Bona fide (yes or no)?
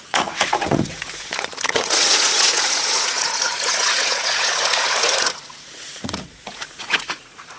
no